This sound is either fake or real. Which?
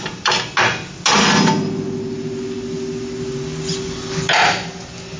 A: real